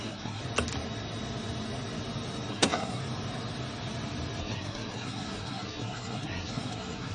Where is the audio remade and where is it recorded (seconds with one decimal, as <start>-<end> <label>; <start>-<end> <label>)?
0.0-0.4 remade; 0.4-2.5 recorded; 2.5-3.0 remade; 3.0-4.4 recorded; 4.4-7.1 remade